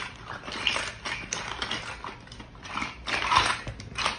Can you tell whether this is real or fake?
real